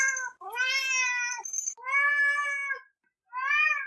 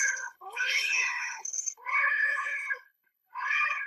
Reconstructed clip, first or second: second